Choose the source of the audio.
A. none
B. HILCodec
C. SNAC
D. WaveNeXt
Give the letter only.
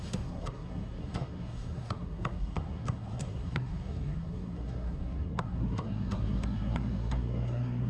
C